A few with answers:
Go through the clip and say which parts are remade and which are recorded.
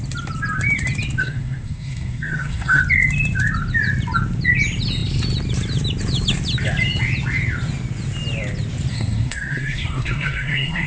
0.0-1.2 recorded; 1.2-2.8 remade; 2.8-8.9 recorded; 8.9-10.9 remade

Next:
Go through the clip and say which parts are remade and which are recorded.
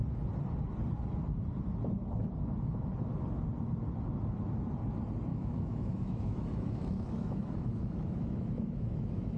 0.0-5.3 recorded; 5.3-9.4 remade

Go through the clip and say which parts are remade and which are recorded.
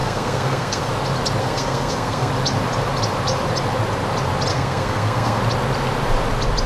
0.0-0.9 remade; 0.9-1.4 recorded; 1.4-2.3 remade; 2.3-4.5 recorded; 4.5-5.4 remade; 5.4-6.7 recorded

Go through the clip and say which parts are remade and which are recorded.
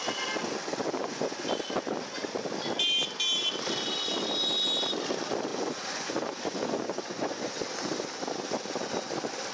0.0-1.0 recorded; 1.0-1.5 remade; 1.5-5.5 recorded; 5.5-7.5 remade; 7.5-9.5 recorded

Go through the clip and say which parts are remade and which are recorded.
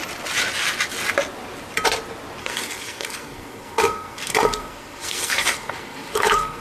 0.0-2.4 recorded; 2.4-6.6 remade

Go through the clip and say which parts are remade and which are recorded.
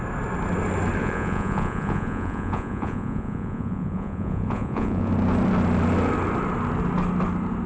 0.0-1.0 recorded; 1.0-5.1 remade; 5.1-7.7 recorded